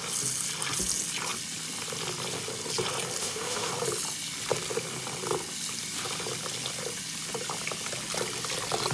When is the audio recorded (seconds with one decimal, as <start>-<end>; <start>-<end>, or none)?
0.0-3.2; 3.7-8.9